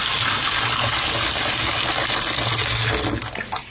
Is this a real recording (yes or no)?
yes